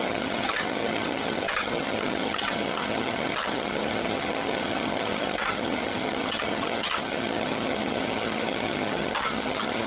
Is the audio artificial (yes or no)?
yes